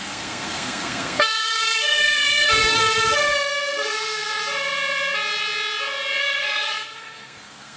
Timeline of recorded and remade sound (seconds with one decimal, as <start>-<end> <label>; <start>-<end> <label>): 0.0-4.4 remade; 4.4-6.2 recorded; 6.2-7.8 remade